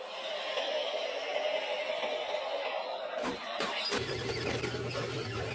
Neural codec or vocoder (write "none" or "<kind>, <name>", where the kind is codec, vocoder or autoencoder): vocoder, BigVGAN v2